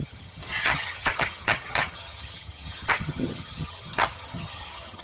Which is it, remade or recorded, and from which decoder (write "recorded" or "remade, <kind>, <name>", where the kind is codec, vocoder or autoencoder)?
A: remade, vocoder, HiFi-GAN